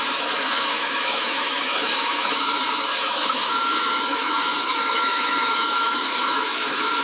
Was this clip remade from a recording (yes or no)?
yes